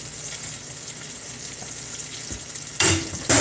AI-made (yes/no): no